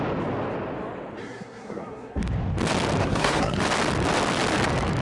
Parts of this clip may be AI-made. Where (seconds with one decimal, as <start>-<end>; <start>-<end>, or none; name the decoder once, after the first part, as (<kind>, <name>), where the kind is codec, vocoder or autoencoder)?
1.2-2.2 (codec, SNAC); 3.0-3.6